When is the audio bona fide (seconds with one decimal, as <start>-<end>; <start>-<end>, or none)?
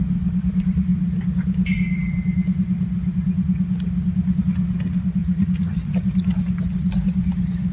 0.0-5.2; 5.9-7.7